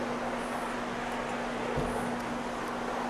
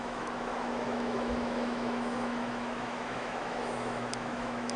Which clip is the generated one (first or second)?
second